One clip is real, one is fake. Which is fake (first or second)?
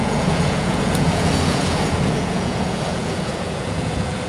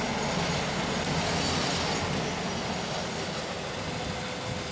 first